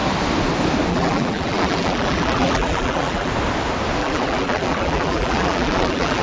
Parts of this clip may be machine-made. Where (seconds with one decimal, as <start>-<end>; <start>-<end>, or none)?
0.9-3.3; 4.0-6.2